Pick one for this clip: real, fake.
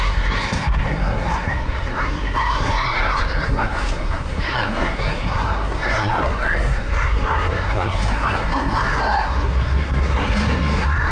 fake